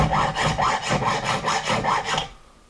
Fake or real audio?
real